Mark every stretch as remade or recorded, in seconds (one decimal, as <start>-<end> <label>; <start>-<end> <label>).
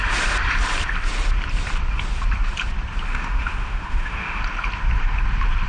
0.0-3.1 recorded; 3.1-4.4 remade; 4.4-5.7 recorded